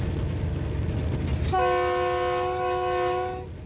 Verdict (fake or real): real